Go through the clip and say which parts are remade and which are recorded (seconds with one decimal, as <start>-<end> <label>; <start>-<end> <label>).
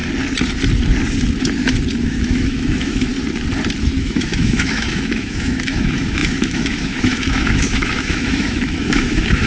0.0-2.0 recorded; 2.0-3.1 remade; 3.1-4.0 recorded; 4.0-9.5 remade